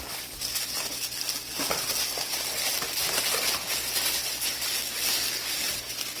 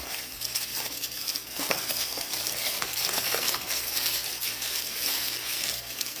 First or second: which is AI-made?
second